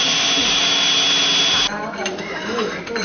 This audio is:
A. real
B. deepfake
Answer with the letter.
A